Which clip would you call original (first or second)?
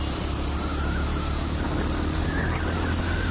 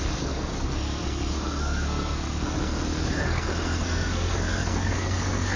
first